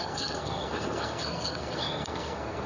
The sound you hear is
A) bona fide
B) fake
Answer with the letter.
B